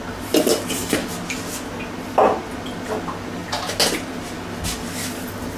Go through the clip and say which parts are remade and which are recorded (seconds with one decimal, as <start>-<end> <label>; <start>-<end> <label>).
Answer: 0.0-5.6 recorded